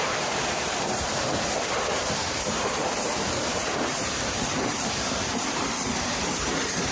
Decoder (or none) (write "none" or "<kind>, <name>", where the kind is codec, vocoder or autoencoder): vocoder, BigVGAN v2